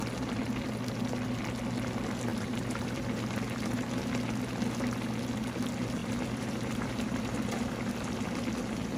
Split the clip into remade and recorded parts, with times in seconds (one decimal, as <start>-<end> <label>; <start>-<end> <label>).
0.0-2.3 recorded; 2.3-4.1 remade; 4.1-6.0 recorded; 6.0-7.9 remade; 7.9-9.0 recorded